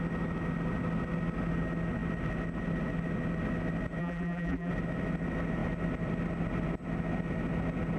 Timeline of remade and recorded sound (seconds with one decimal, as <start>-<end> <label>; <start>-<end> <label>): 0.0-4.0 recorded; 4.0-4.7 remade; 4.7-8.0 recorded